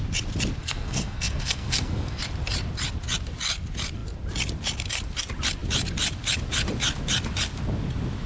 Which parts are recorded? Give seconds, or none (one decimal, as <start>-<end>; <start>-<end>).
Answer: 0.0-0.6; 2.2-8.3